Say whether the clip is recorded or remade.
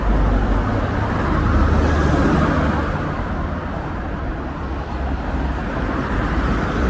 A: recorded